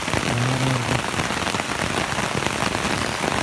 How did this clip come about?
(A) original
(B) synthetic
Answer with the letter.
A